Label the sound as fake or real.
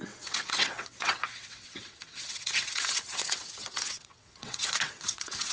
fake